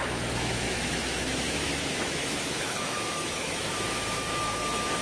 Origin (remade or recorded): remade